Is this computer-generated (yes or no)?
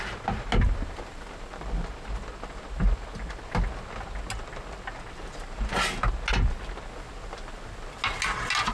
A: no